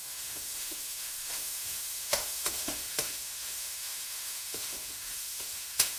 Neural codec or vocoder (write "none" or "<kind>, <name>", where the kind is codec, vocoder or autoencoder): autoencoder, DAC-VAE